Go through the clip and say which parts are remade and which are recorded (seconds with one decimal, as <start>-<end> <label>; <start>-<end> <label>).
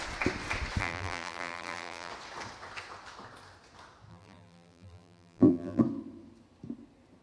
0.0-0.8 recorded; 0.8-2.1 remade; 2.1-4.1 recorded; 4.1-5.8 remade; 5.8-7.2 recorded